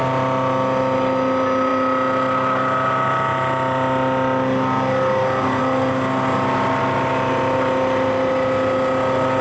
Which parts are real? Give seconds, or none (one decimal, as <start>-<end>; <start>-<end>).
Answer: 0.0-9.4